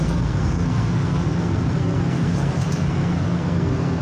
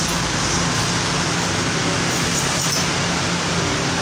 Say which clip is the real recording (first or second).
second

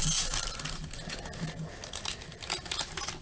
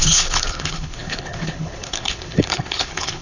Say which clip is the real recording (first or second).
first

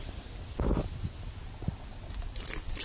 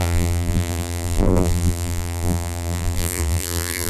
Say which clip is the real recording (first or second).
first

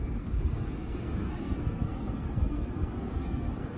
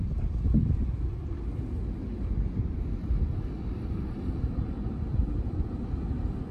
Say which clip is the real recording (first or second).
second